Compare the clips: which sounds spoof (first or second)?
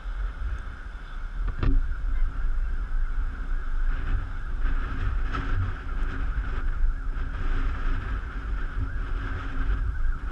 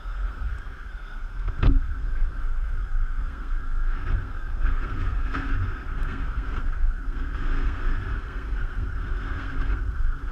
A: second